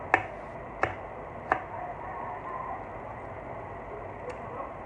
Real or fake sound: real